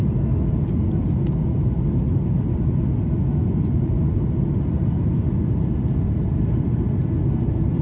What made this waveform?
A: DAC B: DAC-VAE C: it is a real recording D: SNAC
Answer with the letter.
C